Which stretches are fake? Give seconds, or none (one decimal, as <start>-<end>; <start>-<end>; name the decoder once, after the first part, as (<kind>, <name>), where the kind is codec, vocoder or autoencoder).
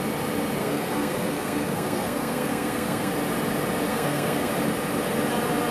0.6-3.1 (codec, SNAC); 3.9-4.5